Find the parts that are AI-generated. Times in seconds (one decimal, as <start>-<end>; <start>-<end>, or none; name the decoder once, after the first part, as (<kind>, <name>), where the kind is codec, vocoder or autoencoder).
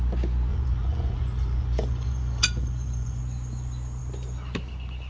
0.5-3.2 (vocoder, Vocos)